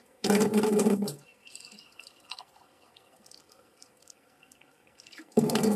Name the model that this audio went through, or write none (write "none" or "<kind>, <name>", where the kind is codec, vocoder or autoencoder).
codec, SNAC